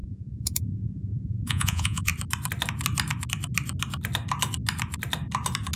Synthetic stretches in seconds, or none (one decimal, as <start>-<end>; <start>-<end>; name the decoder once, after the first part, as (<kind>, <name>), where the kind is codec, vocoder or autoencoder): 0.0-2.1 (vocoder, Vocos)